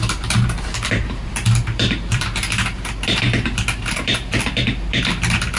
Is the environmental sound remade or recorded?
remade